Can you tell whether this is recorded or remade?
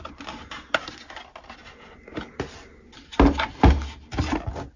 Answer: recorded